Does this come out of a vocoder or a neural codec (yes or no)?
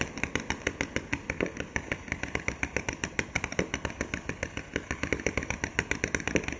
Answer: no